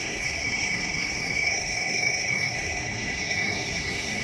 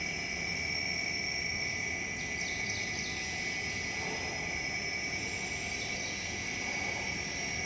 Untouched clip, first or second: second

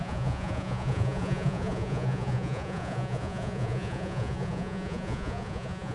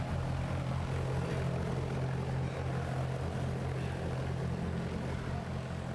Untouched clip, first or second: second